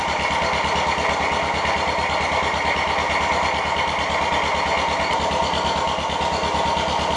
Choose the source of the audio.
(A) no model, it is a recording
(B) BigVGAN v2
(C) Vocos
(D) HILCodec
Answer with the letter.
A